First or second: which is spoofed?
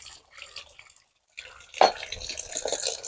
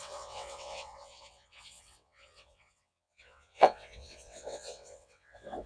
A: second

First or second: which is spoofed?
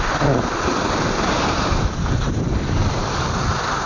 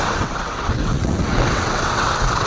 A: second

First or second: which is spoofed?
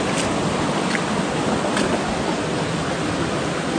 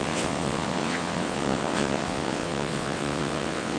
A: second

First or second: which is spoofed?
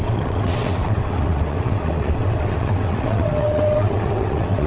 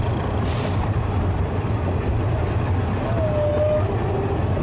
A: first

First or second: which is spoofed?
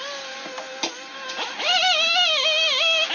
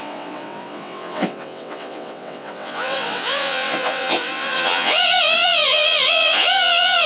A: second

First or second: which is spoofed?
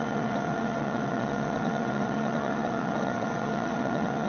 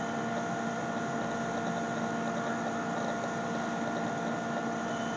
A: first